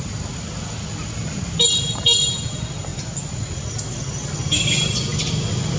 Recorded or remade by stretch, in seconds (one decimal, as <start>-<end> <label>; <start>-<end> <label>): 0.0-5.8 recorded